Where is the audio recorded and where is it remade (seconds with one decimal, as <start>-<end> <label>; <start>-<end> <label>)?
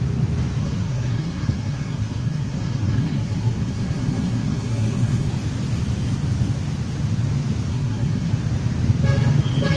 0.0-0.6 recorded; 0.6-5.3 remade; 5.3-7.7 recorded; 7.7-8.3 remade; 8.3-9.8 recorded